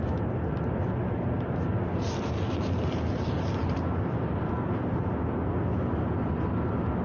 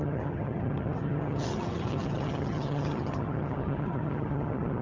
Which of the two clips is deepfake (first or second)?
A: second